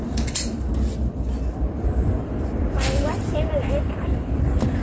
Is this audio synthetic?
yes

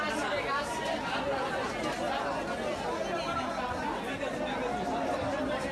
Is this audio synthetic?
no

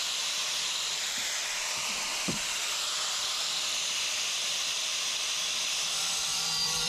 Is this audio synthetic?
yes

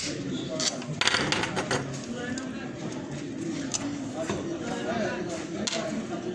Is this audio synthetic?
no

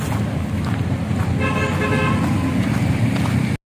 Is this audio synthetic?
no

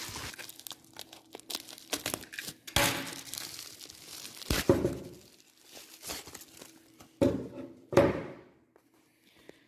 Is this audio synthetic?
no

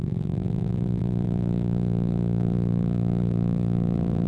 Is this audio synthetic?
yes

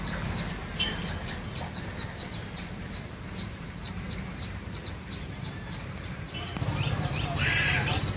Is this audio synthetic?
yes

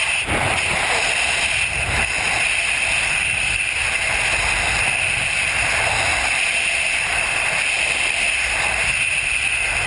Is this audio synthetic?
no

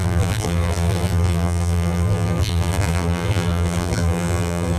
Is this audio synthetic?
yes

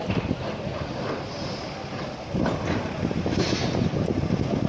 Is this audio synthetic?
yes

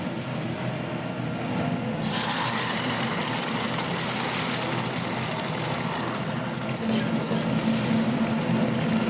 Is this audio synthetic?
no